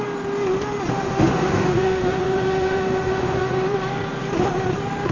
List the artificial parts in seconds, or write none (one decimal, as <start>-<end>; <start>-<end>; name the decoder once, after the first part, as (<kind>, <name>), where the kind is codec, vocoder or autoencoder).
0.9-3.5 (autoencoder, DAC-VAE)